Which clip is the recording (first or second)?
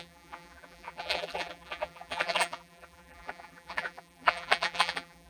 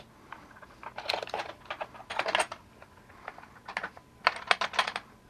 second